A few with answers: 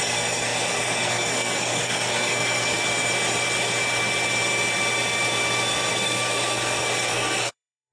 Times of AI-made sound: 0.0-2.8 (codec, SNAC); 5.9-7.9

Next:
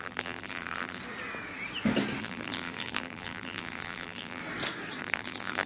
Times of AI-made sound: 0.0-1.0 (vocoder, BigVGAN v2); 2.2-4.4; 5.0-5.7